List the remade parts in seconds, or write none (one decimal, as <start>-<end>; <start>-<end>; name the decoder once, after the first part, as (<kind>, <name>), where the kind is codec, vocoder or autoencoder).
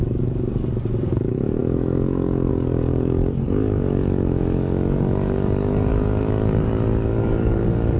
0.0-8.0 (codec, DAC)